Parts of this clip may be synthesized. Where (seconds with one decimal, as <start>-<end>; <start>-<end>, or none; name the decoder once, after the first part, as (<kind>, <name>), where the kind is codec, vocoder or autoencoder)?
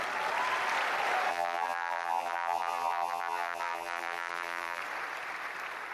1.3-4.8 (vocoder, BigVGAN v2)